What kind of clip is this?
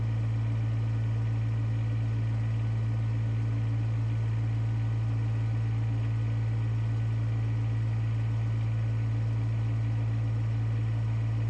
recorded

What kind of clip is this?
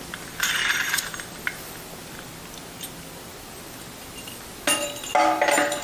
recorded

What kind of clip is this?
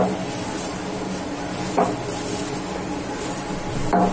recorded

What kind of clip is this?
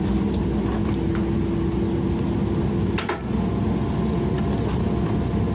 recorded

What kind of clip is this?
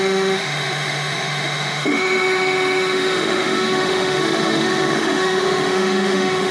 remade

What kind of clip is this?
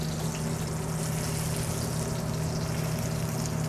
recorded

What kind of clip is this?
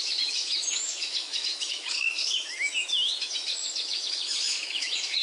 remade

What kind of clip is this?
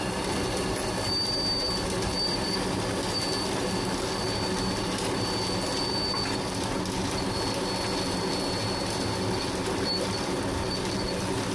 recorded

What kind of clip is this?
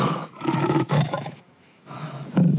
remade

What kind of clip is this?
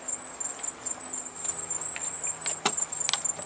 recorded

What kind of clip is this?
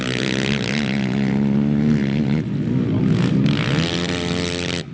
recorded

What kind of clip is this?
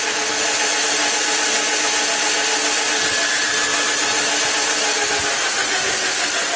recorded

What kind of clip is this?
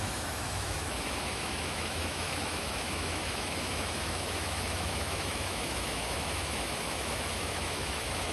remade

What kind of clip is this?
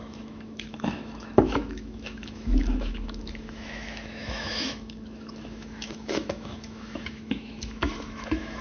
remade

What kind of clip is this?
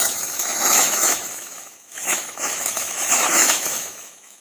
remade